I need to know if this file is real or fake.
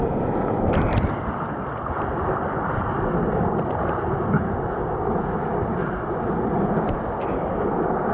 real